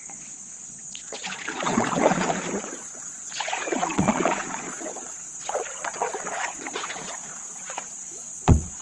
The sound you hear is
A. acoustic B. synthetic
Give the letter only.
B